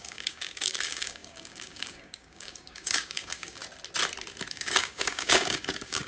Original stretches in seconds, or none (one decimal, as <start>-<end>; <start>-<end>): 3.6-4.5